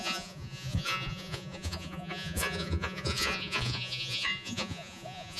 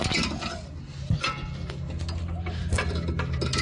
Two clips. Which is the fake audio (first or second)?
first